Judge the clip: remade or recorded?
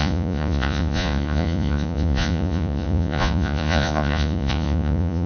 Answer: remade